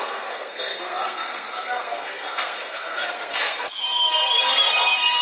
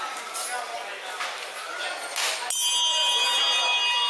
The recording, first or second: second